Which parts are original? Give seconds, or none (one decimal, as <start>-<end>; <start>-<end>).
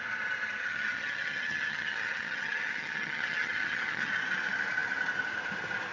0.0-0.6; 4.1-5.9